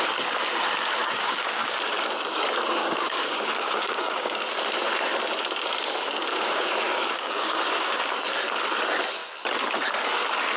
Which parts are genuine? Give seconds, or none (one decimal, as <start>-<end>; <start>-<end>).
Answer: 0.0-1.0; 1.7-2.8; 4.4-6.3; 8.0-10.6